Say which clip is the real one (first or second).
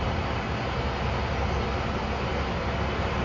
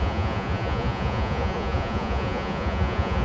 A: first